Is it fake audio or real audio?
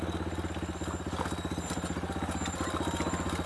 real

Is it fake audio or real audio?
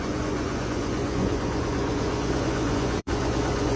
fake